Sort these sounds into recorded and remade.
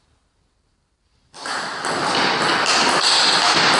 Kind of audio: recorded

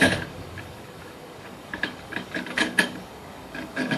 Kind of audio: remade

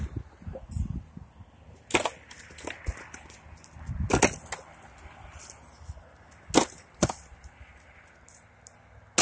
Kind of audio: recorded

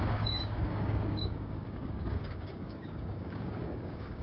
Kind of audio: remade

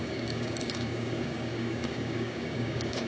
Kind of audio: remade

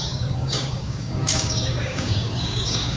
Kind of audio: remade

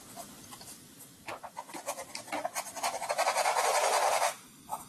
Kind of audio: recorded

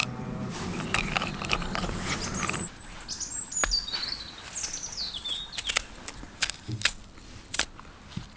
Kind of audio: recorded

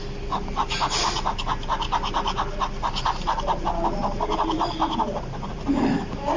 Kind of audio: recorded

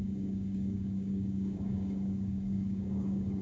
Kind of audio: remade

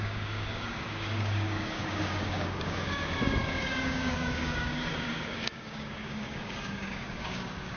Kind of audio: remade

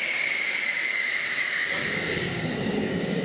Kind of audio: remade